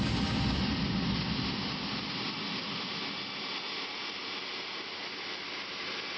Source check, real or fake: real